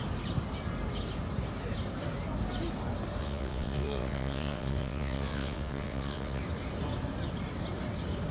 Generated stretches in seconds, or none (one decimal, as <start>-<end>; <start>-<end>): 3.2-6.4